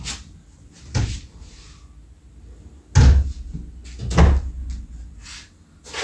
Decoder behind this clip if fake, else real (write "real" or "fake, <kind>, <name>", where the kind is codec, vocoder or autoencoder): real